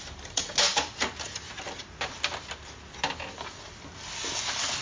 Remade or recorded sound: recorded